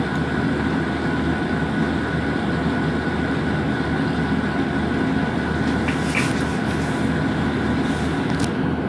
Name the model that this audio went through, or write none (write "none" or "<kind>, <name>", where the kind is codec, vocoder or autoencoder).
none